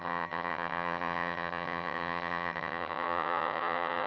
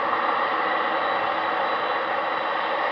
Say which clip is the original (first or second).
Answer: second